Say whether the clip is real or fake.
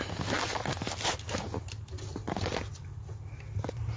real